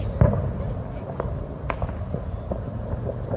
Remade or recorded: recorded